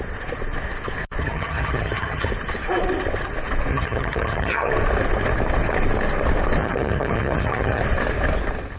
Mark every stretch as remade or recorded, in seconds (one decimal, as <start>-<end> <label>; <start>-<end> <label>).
0.0-1.2 recorded; 1.2-2.3 remade; 2.3-3.7 recorded; 3.7-4.7 remade; 4.7-6.6 recorded; 6.6-7.8 remade; 7.8-8.8 recorded